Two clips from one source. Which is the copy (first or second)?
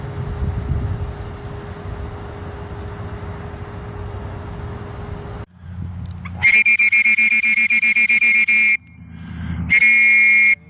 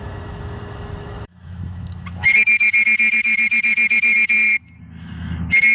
second